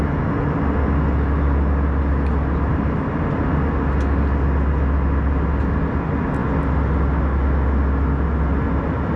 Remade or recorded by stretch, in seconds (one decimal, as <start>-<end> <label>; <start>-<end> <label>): 0.0-2.7 recorded; 2.7-3.6 remade; 3.6-9.2 recorded